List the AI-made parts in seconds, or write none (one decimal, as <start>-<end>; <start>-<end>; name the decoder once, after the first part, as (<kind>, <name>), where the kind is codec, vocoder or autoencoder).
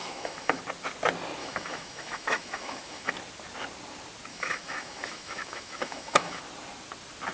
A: 0.0-0.6 (autoencoder, DAC-VAE); 1.4-3.1; 4.3-6.4